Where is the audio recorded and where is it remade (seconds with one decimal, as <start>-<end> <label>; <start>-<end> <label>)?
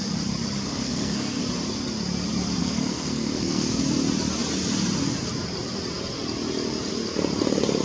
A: 0.0-0.7 recorded; 0.7-1.4 remade; 1.4-2.6 recorded; 2.6-3.8 remade; 3.8-7.8 recorded